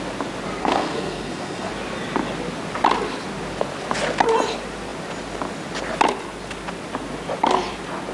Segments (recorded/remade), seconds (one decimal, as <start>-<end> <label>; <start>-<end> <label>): 0.0-0.6 recorded; 0.6-1.7 remade; 1.7-8.1 recorded